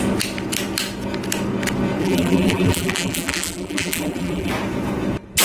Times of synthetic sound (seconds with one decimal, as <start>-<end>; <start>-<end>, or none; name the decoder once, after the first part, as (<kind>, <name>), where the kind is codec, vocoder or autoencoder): 2.0-4.5 (vocoder, BigVGAN v2)